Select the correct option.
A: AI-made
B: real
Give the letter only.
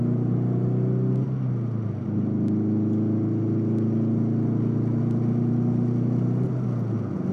B